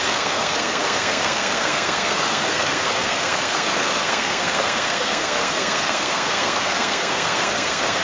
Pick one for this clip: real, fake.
fake